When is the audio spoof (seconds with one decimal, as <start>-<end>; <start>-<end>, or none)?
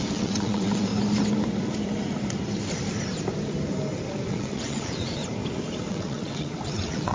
0.0-0.9; 4.3-5.2; 5.9-7.1